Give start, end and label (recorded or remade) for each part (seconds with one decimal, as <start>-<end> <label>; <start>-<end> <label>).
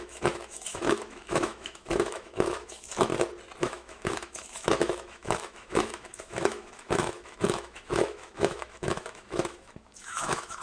0.0-3.1 remade; 3.1-3.6 recorded; 3.6-10.6 remade